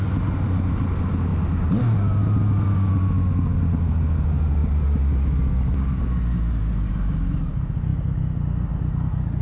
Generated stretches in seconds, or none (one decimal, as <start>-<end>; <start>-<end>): none